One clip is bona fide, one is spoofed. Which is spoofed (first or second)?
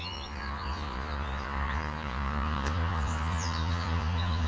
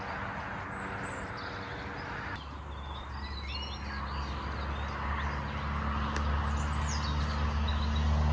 first